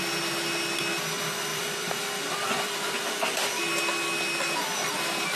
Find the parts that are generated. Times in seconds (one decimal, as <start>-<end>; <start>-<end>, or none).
1.5-3.7